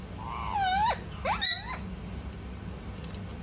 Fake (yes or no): no